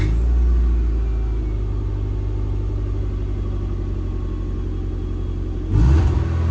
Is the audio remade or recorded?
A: recorded